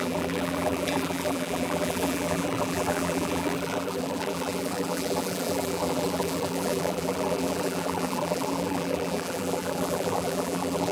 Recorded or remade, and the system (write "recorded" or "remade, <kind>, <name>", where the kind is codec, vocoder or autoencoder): remade, vocoder, BigVGAN v2